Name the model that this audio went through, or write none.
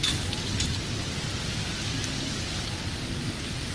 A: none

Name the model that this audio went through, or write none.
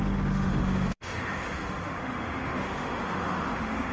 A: autoencoder, DAC-VAE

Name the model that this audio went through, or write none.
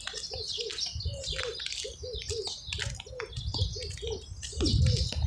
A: none